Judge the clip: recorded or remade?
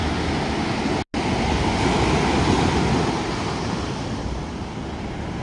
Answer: recorded